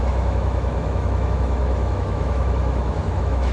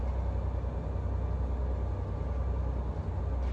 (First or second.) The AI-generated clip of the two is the first